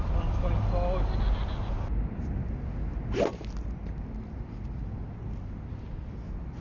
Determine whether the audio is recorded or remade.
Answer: recorded